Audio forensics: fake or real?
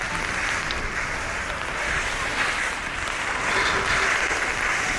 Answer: real